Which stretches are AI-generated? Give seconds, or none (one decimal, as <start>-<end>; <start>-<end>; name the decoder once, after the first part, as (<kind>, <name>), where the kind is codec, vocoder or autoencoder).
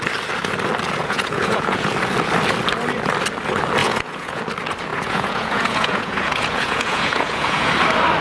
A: 1.0-1.9 (vocoder, Vocos); 3.8-4.4; 4.9-7.7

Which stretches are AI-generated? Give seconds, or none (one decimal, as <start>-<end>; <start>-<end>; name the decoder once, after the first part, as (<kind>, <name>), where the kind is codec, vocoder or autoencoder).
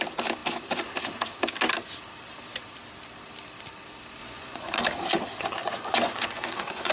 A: 4.2-4.8 (vocoder, Vocos); 5.6-6.9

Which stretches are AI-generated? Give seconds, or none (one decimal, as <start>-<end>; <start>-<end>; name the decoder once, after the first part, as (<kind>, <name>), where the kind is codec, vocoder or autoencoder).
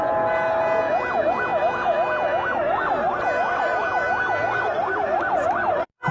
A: none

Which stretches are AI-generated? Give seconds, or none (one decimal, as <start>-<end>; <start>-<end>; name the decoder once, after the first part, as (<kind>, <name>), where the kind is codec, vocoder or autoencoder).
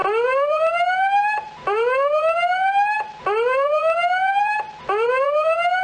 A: 0.0-5.8 (vocoder, BigVGAN v2)